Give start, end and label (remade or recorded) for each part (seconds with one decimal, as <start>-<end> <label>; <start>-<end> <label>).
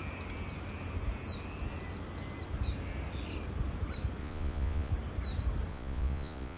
0.0-4.2 recorded; 4.2-4.9 remade; 4.9-5.7 recorded; 5.7-6.6 remade